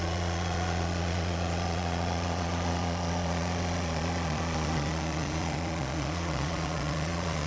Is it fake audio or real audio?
fake